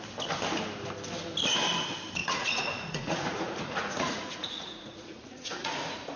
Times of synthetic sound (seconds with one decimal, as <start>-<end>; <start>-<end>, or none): 2.2-6.2